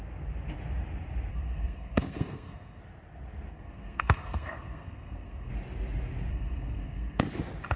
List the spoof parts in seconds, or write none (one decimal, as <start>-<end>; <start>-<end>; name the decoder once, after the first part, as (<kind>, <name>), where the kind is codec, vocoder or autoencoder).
1.3-2.8 (codec, SNAC); 3.5-5.5; 6.3-7.2